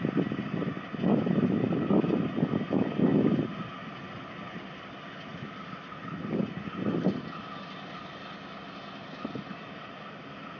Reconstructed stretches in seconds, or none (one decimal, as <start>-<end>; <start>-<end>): none